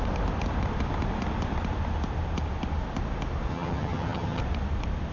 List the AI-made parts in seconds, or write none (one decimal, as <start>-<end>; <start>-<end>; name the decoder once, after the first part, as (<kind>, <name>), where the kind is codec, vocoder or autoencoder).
3.5-4.4 (vocoder, HiFi-GAN)